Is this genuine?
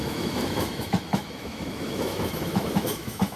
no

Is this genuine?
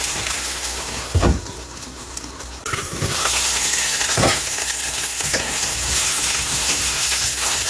no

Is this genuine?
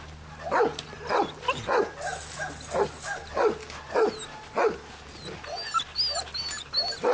yes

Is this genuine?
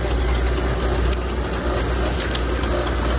yes